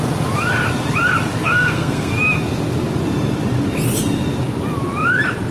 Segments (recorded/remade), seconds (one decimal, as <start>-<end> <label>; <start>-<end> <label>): 0.0-1.4 recorded; 1.4-2.1 remade; 2.1-5.5 recorded